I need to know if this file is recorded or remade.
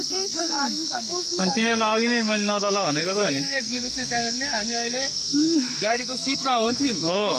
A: remade